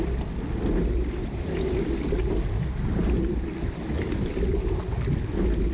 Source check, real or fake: real